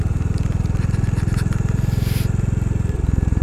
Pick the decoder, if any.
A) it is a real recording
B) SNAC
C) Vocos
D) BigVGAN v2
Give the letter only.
A